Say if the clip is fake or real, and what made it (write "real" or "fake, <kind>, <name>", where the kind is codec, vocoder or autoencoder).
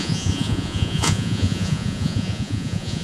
fake, vocoder, Vocos